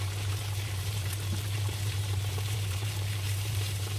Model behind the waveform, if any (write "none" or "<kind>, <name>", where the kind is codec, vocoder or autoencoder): vocoder, BigVGAN v2